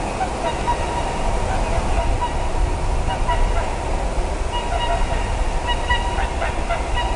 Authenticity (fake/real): real